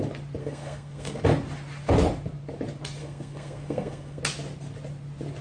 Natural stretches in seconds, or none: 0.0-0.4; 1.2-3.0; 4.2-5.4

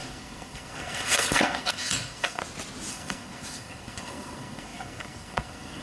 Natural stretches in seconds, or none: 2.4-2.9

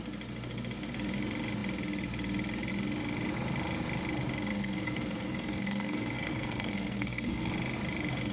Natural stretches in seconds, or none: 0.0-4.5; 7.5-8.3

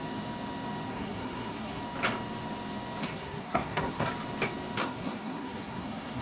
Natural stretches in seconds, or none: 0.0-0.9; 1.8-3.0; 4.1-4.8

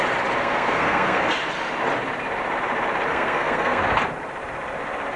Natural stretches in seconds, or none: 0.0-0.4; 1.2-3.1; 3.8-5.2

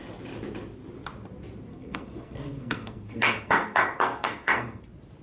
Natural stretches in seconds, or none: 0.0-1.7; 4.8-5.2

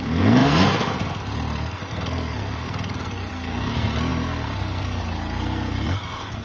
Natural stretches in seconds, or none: none